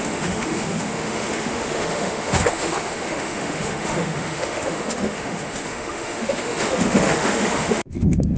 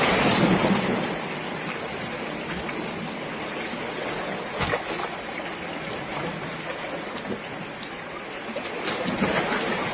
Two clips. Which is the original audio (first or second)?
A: second